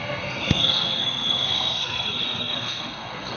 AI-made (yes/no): yes